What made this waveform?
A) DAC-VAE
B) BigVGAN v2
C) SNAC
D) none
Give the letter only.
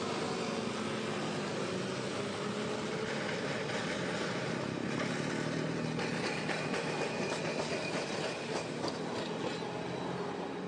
D